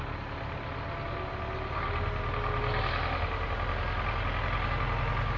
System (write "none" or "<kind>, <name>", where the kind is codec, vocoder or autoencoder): none